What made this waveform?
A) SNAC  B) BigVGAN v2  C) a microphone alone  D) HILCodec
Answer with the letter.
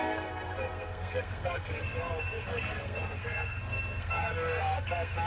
A